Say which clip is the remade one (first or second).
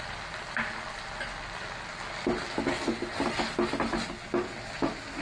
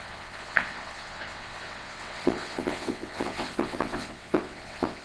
second